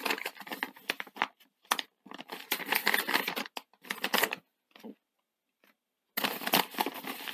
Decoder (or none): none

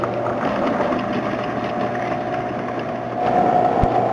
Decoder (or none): none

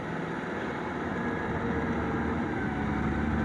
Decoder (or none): none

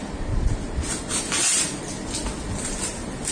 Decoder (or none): none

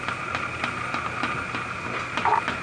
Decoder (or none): none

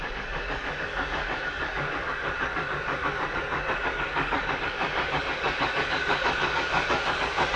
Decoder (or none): codec, DAC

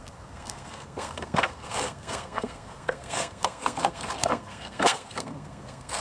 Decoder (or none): codec, SNAC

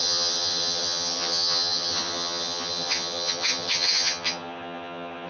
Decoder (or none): vocoder, HiFi-GAN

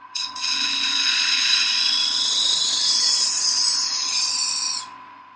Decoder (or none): vocoder, Vocos